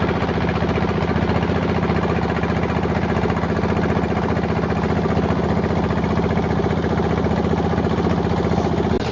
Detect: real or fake real